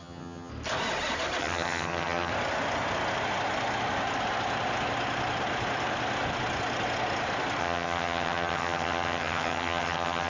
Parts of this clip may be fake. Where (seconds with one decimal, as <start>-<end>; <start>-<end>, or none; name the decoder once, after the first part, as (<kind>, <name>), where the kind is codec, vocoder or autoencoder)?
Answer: 0.0-0.5 (vocoder, HiFi-GAN); 1.4-2.3; 7.6-10.3